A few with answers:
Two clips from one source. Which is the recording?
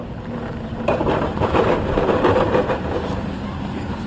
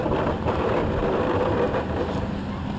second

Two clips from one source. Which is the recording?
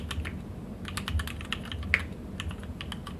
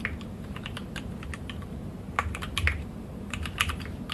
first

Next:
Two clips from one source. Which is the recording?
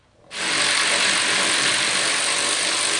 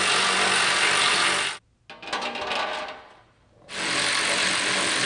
second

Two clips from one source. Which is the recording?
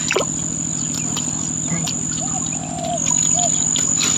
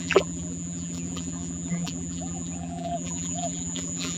first